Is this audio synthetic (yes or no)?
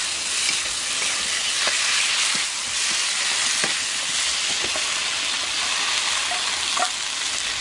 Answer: no